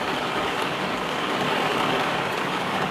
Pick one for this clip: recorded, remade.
remade